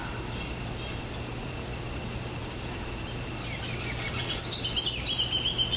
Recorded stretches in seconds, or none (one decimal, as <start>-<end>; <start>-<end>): 0.0-5.8